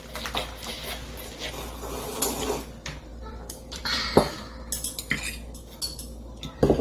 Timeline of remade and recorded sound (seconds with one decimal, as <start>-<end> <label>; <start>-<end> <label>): 0.0-3.1 recorded; 3.1-4.3 remade; 4.3-6.8 recorded